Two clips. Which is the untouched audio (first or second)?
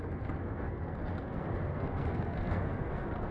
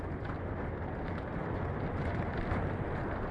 second